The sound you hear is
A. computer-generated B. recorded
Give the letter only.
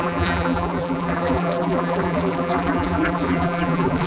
A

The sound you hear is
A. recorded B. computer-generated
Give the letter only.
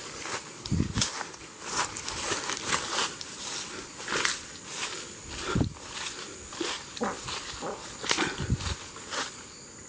A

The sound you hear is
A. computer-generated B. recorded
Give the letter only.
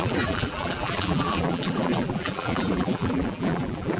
A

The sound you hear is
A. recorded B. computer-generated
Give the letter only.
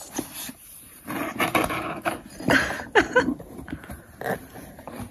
B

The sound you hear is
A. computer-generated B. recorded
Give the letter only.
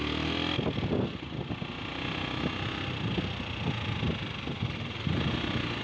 B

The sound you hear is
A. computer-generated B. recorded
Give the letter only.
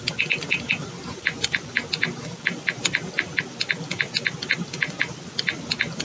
B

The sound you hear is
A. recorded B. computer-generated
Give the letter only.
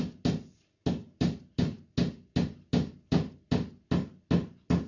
A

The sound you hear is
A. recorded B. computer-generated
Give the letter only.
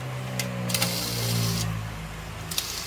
A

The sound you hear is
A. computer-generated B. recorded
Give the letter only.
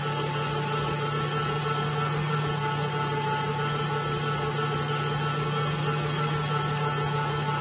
B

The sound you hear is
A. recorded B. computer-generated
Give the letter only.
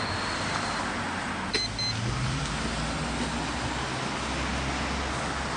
A